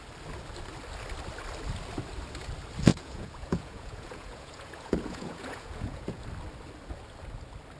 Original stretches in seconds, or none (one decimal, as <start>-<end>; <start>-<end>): 0.0-2.9; 6.2-7.8